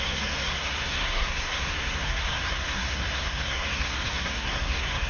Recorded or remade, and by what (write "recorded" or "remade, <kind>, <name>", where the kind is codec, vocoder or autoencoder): remade, codec, SNAC